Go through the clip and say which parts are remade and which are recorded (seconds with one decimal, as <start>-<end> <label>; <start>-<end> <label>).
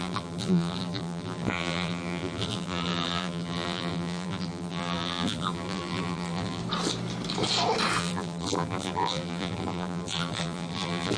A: 0.0-6.6 remade; 6.6-8.0 recorded; 8.0-11.2 remade